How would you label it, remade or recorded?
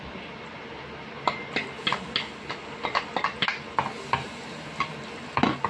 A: recorded